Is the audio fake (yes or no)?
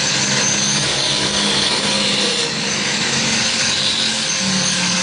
yes